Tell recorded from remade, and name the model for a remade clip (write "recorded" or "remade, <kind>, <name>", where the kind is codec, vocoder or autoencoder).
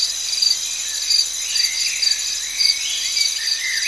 recorded